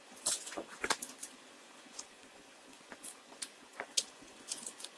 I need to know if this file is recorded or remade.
remade